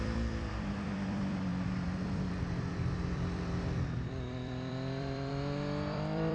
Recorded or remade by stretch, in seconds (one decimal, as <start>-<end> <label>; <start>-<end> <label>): 0.0-6.3 remade